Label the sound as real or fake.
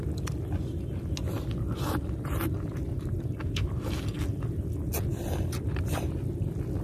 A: real